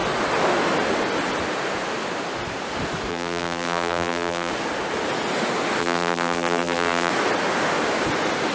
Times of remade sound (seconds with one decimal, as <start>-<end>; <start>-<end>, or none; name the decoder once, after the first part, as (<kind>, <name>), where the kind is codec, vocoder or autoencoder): 3.1-4.5 (vocoder, BigVGAN v2); 5.8-7.1